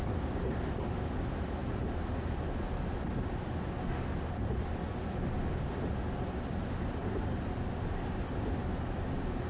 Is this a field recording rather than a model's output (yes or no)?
yes